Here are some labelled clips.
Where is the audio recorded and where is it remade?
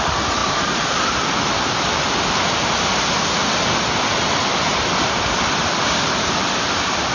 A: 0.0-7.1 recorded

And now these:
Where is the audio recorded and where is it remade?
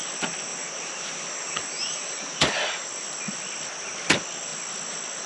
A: 0.0-0.5 recorded; 0.5-2.5 remade; 2.5-5.3 recorded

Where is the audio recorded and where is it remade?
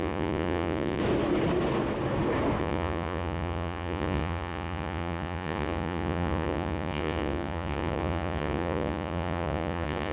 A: 0.0-1.0 remade; 1.0-2.6 recorded; 2.6-10.1 remade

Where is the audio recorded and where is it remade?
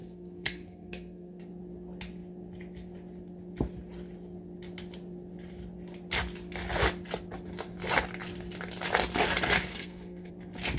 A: 0.0-1.4 remade; 1.4-9.7 recorded; 9.7-10.3 remade; 10.3-10.8 recorded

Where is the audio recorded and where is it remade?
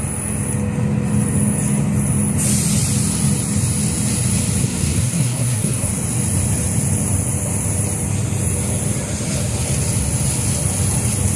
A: 0.0-4.6 recorded; 4.6-5.9 remade; 5.9-11.4 recorded